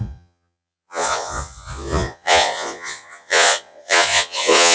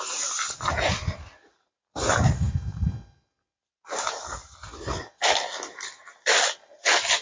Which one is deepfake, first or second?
first